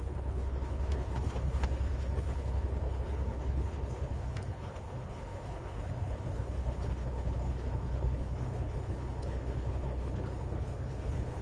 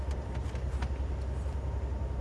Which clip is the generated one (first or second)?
first